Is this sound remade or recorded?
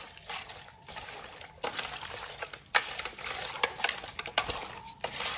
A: recorded